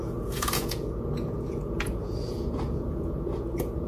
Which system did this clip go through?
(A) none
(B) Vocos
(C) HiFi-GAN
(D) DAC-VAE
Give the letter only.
B